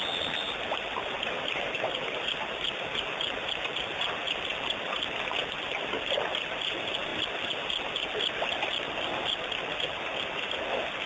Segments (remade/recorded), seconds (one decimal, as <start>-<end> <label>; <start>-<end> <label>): 0.0-11.1 recorded